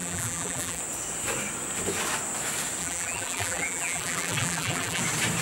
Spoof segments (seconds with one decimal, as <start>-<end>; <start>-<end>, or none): 0.0-0.8; 2.8-5.0